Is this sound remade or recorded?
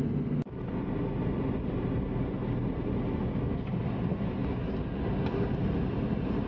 recorded